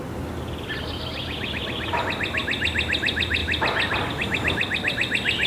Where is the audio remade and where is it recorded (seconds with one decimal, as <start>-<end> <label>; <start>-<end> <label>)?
0.0-5.5 recorded